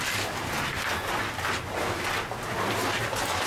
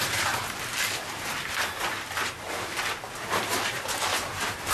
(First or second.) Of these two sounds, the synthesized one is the second